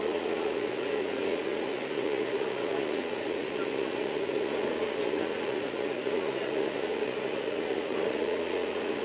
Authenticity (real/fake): fake